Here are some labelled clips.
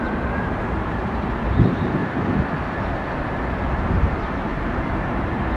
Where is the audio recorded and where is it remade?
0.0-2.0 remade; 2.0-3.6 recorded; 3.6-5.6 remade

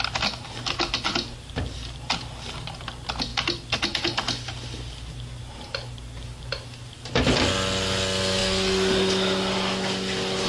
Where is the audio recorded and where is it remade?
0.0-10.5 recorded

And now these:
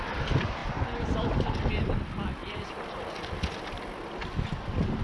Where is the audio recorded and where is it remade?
0.0-2.4 recorded; 2.4-3.0 remade; 3.0-5.0 recorded

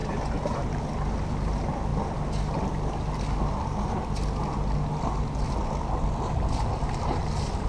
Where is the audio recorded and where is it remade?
0.0-0.8 remade; 0.8-7.7 recorded